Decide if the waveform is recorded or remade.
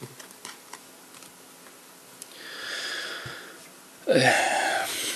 recorded